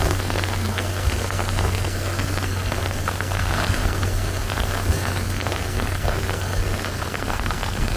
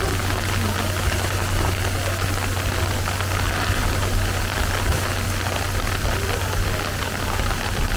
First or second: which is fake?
first